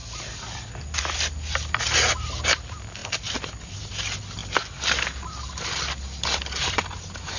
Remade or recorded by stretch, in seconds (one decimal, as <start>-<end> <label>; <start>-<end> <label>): 0.0-7.4 recorded